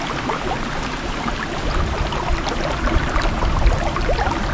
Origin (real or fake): real